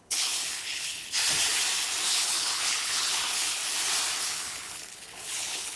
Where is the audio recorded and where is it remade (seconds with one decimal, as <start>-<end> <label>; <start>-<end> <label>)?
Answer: 0.0-1.2 remade; 1.2-2.1 recorded; 2.1-3.6 remade; 3.6-4.2 recorded; 4.2-5.8 remade